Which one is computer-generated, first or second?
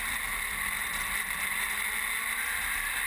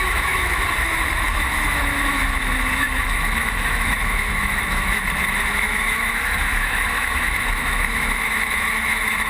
second